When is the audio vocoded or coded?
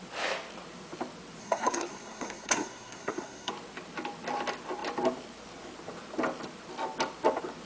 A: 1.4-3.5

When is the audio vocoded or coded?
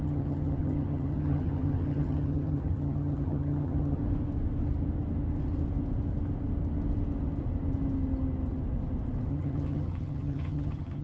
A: 0.0-4.0; 9.3-11.0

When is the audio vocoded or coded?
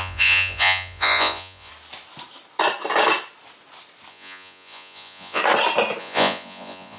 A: 0.0-1.7; 4.1-5.4; 6.0-7.0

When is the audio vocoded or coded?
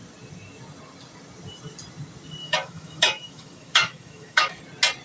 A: 2.4-4.6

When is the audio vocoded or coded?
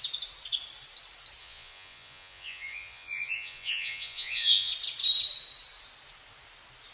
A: 1.4-4.7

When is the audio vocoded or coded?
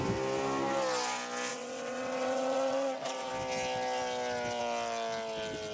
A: 1.5-3.3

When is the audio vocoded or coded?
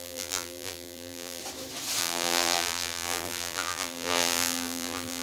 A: 0.0-1.4; 2.0-5.2